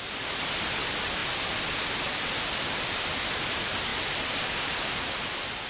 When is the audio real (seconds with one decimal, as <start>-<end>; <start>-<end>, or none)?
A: 0.0-5.7